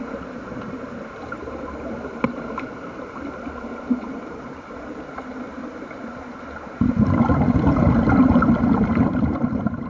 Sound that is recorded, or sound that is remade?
remade